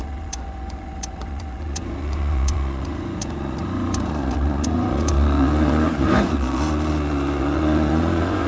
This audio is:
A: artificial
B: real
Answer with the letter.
A